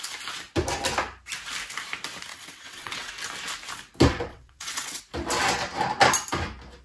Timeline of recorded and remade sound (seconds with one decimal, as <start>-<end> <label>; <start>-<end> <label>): 0.0-2.3 recorded; 2.3-3.1 remade; 3.1-4.3 recorded; 4.3-5.0 remade; 5.0-6.8 recorded